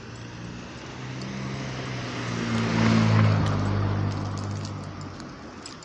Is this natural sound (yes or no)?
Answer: yes